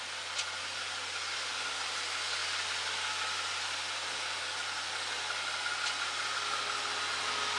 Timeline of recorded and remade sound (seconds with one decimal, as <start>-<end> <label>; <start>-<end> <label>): 0.0-7.6 recorded